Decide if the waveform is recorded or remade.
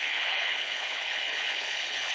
remade